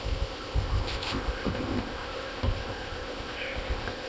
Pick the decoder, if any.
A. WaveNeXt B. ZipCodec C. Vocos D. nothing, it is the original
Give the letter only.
B